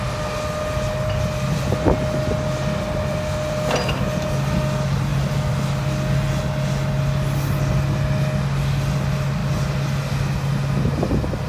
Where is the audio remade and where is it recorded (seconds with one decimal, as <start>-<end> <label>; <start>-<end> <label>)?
0.0-11.5 recorded